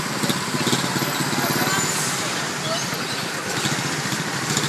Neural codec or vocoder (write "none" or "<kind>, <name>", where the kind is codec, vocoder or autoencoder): none